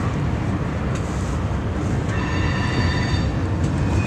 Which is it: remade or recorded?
recorded